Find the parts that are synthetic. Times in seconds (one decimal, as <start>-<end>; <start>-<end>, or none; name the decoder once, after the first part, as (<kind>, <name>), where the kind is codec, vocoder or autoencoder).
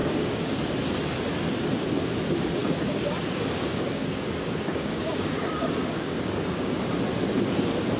0.0-0.7 (codec, DAC); 2.6-6.9